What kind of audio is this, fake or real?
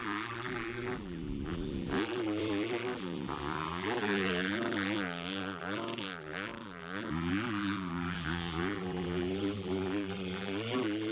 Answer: fake